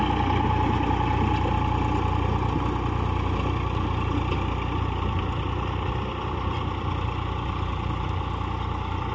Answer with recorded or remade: recorded